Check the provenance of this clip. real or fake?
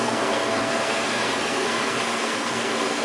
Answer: fake